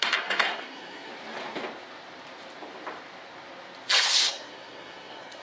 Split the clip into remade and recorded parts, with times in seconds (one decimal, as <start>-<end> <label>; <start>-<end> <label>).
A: 0.0-1.1 remade; 1.1-4.3 recorded; 4.3-5.4 remade